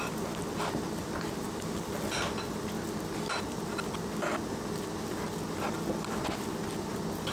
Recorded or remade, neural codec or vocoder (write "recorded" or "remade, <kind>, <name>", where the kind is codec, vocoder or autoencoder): recorded